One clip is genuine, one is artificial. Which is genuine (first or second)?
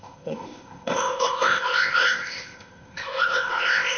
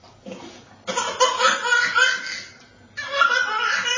second